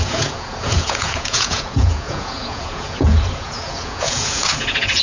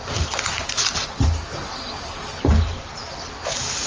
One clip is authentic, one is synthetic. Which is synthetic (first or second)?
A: first